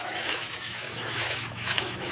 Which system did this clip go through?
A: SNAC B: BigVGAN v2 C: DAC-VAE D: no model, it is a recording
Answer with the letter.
C